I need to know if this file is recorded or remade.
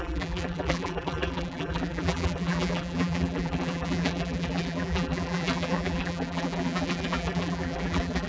remade